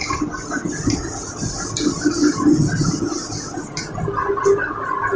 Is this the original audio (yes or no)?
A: yes